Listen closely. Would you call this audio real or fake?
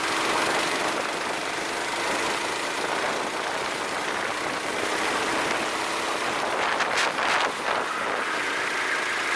real